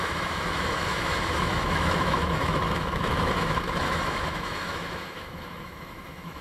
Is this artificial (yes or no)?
yes